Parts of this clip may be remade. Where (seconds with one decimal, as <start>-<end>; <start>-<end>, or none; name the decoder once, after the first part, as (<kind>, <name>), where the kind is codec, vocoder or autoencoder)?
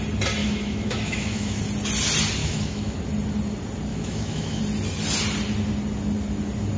0.4-1.6 (autoencoder, DAC-VAE); 2.4-3.0; 3.9-4.6